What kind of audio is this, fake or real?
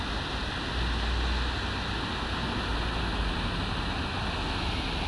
real